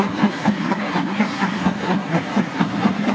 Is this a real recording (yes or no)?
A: no